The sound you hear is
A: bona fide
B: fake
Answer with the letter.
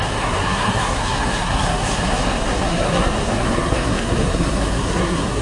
B